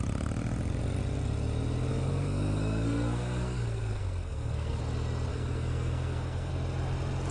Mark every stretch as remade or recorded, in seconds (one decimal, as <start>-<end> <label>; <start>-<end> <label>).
0.0-1.9 recorded; 1.9-4.8 remade; 4.8-5.3 recorded; 5.3-6.5 remade; 6.5-7.3 recorded